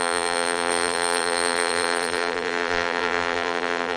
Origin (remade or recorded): remade